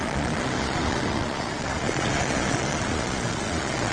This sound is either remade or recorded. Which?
remade